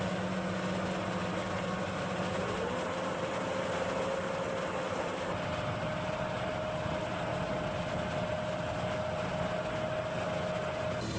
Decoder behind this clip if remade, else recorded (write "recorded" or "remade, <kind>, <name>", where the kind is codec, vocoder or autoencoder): recorded